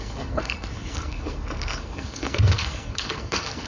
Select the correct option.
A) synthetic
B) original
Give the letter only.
A